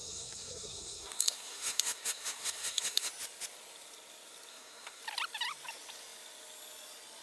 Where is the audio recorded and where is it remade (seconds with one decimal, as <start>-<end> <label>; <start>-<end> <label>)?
0.0-3.1 remade; 3.1-4.5 recorded; 4.5-5.0 remade; 5.0-7.2 recorded